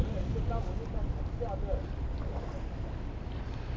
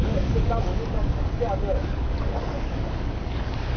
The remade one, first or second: second